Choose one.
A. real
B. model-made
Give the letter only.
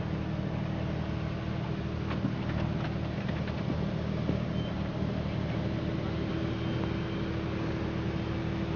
A